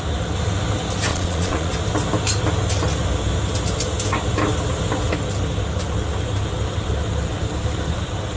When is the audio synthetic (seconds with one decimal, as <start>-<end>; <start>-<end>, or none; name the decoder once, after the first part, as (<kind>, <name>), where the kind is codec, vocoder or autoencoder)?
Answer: 1.1-1.7 (vocoder, Vocos)